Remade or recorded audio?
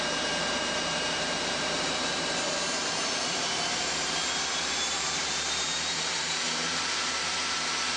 remade